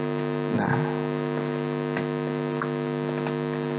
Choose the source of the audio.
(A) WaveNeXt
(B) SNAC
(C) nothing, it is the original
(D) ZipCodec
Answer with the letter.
C